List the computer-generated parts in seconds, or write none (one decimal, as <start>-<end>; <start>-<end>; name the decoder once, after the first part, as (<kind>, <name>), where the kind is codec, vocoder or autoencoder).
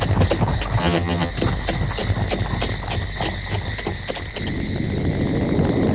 0.8-1.3 (vocoder, HiFi-GAN)